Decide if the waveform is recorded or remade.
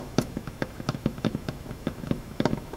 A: remade